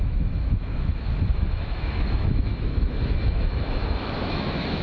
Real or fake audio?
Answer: fake